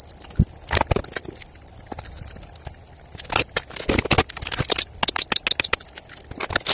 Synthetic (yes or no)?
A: no